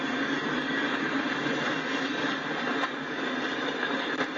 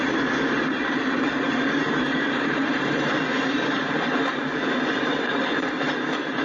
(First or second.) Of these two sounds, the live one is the first